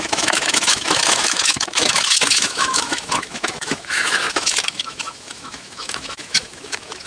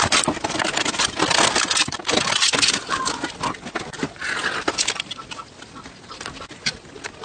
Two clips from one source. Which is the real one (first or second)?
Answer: second